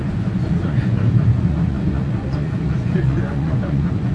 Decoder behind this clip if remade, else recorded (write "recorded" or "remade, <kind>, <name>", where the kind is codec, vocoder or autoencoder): remade, vocoder, Vocos